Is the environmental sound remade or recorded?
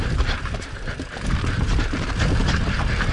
remade